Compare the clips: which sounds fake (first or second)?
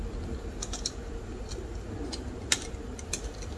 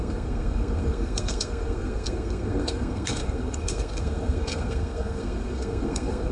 second